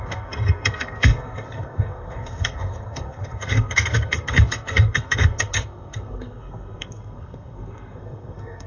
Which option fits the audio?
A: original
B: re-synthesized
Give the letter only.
B